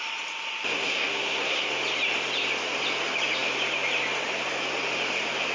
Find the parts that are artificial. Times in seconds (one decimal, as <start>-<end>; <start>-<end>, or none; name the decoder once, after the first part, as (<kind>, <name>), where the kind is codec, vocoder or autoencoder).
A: 0.7-1.7 (codec, SNAC)